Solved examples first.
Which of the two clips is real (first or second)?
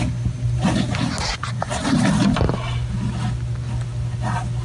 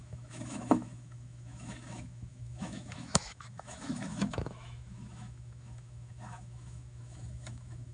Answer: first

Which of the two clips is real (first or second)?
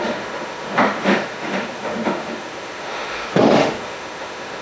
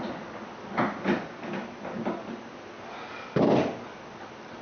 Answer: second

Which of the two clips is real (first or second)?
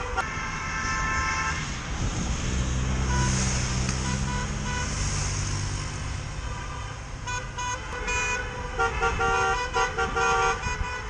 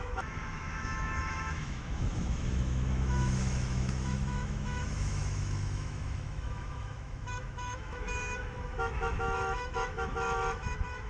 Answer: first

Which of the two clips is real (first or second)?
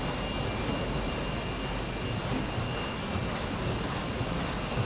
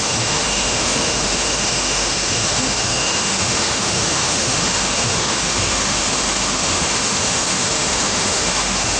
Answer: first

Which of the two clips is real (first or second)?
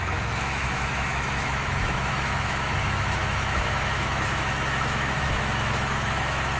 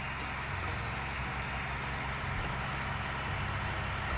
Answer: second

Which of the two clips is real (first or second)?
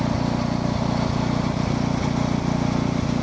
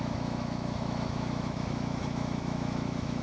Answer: first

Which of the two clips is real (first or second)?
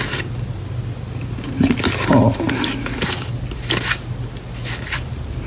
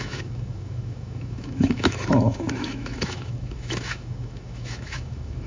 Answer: first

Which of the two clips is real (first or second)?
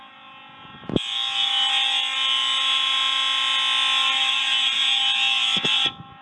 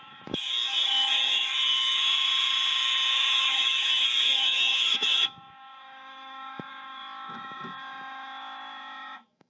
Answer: first